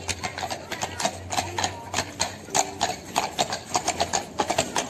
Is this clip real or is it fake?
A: real